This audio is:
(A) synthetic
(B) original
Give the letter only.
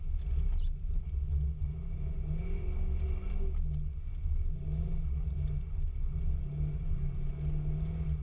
B